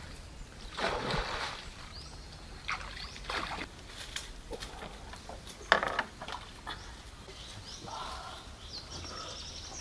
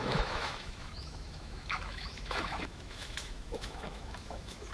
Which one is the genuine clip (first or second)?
first